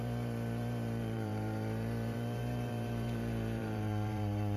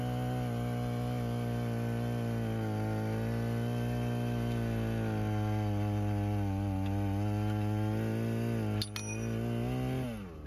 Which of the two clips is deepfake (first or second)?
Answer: first